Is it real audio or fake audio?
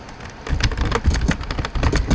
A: real